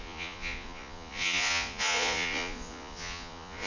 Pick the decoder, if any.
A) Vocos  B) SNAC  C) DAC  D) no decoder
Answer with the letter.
A